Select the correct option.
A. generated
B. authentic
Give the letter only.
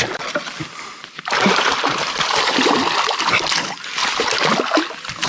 B